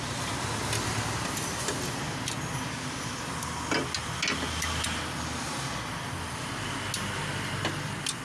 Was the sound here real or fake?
real